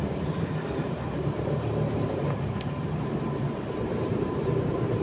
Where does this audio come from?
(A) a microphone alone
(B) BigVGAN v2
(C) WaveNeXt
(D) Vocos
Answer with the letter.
B